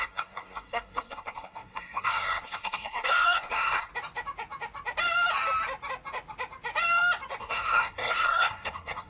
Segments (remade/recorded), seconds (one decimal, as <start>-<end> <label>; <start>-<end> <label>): 0.0-3.9 remade; 3.9-7.4 recorded; 7.4-9.1 remade